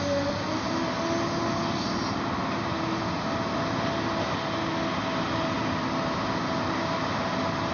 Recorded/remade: recorded